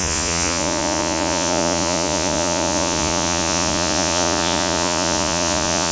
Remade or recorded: remade